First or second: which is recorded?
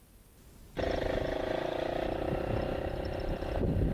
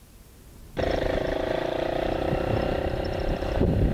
first